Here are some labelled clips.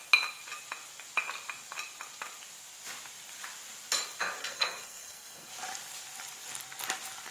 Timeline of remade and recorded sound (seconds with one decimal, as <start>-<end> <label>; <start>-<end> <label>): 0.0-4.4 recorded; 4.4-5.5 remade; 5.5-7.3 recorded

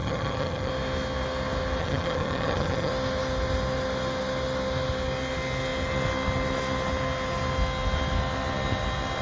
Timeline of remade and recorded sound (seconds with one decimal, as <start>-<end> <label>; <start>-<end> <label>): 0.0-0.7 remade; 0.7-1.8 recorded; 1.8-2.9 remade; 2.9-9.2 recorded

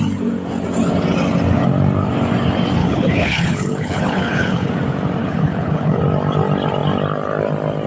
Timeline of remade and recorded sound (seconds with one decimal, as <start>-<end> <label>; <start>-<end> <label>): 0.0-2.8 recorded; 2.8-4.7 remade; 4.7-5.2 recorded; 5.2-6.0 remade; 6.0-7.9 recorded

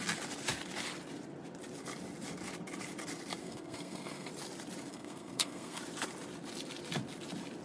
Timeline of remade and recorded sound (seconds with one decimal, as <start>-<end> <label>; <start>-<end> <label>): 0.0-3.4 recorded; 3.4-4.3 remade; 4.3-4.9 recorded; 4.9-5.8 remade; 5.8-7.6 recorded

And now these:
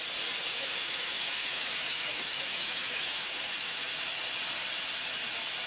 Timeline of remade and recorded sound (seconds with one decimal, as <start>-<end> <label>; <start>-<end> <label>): 0.0-0.5 recorded; 0.5-3.9 remade; 3.9-5.7 recorded

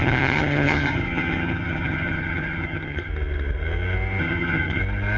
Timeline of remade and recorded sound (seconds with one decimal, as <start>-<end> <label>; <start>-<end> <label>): 0.0-3.1 remade; 3.1-4.2 recorded; 4.2-4.8 remade; 4.8-5.2 recorded